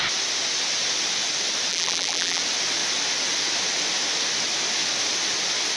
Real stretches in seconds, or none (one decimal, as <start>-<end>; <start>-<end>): 0.0-1.7; 2.4-5.8